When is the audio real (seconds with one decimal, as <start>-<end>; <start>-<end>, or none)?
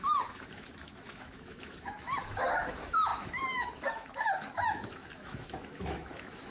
none